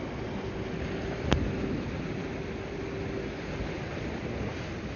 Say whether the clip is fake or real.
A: real